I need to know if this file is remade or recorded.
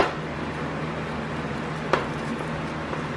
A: recorded